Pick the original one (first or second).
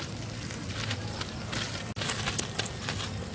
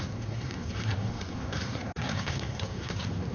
first